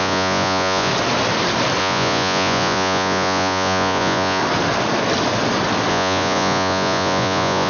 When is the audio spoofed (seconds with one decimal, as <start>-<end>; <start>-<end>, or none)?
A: 0.0-0.9; 1.8-4.4; 5.9-7.7